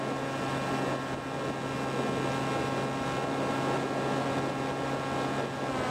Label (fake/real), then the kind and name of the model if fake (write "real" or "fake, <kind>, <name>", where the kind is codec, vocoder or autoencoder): real